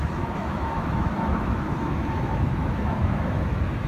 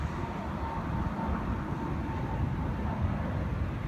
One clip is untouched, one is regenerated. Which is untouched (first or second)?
second